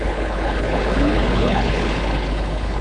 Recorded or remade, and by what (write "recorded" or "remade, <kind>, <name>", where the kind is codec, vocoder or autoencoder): remade, codec, HILCodec